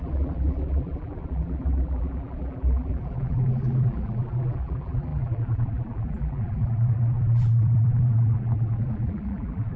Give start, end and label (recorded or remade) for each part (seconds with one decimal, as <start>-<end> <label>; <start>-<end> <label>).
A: 0.0-9.8 remade